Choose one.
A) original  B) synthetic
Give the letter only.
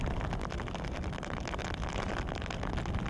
A